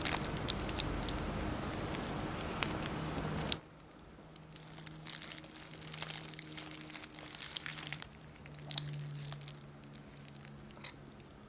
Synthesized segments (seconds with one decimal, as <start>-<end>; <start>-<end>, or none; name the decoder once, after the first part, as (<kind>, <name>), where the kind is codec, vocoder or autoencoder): 7.7-8.4 (vocoder, BigVGAN v2)